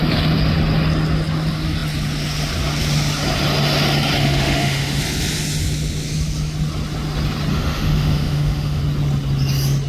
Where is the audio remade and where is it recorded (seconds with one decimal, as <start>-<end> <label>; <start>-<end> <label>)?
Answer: 0.0-4.2 recorded; 4.2-5.0 remade; 5.0-7.5 recorded; 7.5-8.8 remade; 8.8-9.9 recorded